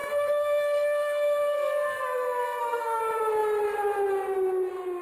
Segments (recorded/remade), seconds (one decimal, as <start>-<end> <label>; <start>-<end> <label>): 0.0-3.0 remade; 3.0-5.0 recorded